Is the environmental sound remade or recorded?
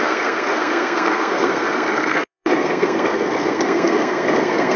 remade